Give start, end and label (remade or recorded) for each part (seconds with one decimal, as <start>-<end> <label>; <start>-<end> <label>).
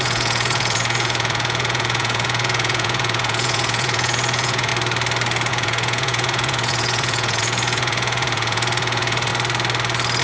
0.0-4.7 remade; 4.7-5.5 recorded; 5.5-9.3 remade; 9.3-10.2 recorded